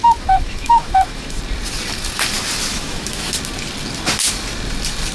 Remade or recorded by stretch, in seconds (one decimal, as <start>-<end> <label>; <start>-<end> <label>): 0.0-1.4 remade; 1.4-2.7 recorded; 2.7-3.3 remade; 3.3-5.1 recorded